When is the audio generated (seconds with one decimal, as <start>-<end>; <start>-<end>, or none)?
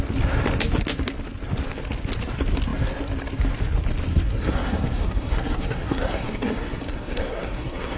4.1-8.0